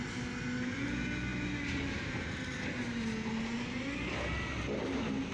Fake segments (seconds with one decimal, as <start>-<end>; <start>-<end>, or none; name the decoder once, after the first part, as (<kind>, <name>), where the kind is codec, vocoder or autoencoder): none